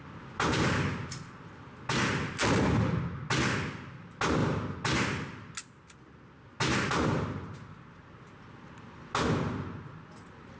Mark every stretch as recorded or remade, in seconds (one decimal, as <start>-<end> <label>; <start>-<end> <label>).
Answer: 0.0-10.6 recorded